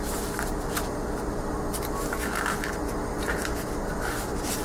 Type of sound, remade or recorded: recorded